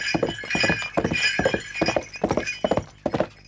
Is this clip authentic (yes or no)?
yes